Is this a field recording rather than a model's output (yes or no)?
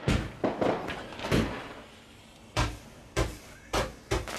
yes